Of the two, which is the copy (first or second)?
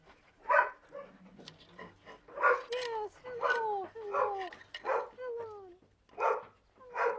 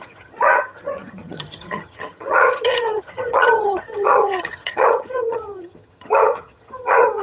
second